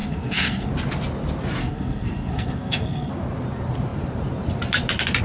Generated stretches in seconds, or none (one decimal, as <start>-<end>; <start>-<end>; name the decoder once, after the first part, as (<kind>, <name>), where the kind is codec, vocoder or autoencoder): 0.0-0.7 (codec, SNAC); 1.6-3.1